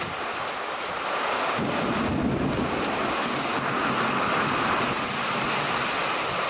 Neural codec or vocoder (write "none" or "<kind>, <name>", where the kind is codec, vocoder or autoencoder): none